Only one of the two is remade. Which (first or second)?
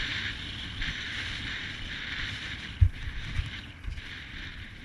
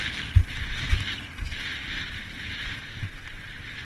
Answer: first